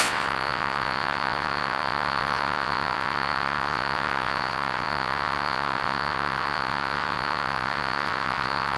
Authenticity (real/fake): fake